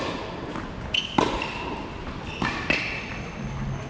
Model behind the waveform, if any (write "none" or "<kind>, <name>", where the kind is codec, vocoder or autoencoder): none